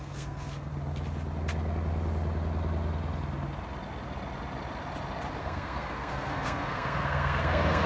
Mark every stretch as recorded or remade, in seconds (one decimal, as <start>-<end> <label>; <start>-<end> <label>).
0.0-0.7 remade; 0.7-5.4 recorded; 5.4-7.9 remade